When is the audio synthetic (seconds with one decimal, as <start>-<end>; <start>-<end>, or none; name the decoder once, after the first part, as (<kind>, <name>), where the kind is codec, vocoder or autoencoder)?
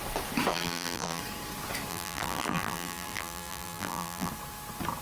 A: 0.5-1.2 (vocoder, BigVGAN v2); 1.9-4.3